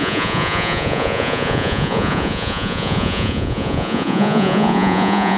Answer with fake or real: fake